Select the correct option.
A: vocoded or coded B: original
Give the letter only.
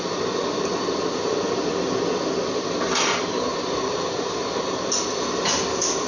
B